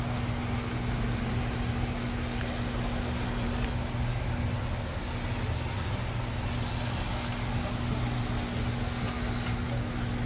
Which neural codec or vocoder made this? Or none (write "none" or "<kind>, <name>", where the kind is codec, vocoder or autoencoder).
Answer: none